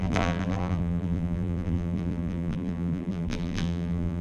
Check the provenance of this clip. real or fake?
fake